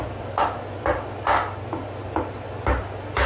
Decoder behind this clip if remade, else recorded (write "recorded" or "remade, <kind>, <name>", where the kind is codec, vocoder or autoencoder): recorded